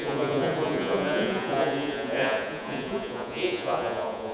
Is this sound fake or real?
fake